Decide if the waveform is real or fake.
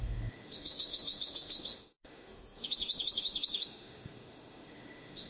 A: fake